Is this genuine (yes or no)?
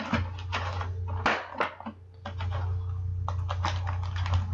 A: yes